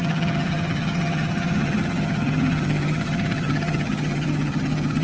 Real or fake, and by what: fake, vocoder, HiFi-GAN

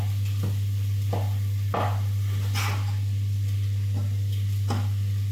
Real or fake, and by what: real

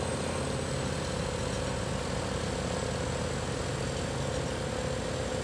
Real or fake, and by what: real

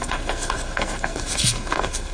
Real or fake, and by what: fake, codec, SNAC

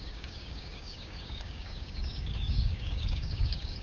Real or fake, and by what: fake, codec, DAC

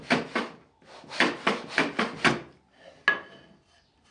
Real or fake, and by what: real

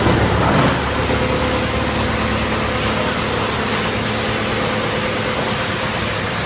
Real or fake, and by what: real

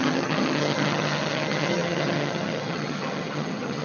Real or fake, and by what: fake, vocoder, HiFi-GAN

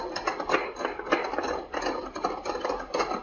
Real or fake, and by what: real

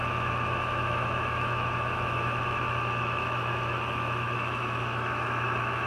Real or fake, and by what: fake, autoencoder, DAC-VAE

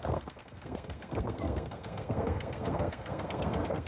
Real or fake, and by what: fake, codec, SNAC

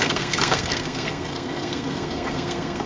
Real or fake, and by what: fake, codec, SNAC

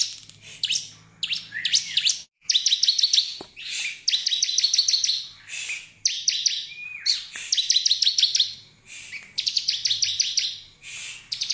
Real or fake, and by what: real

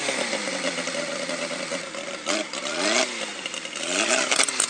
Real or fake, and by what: real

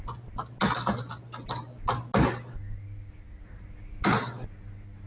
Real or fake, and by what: real